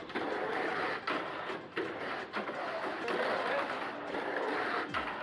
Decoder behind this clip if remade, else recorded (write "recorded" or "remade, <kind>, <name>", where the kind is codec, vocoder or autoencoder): recorded